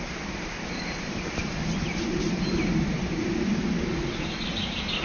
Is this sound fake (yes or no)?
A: yes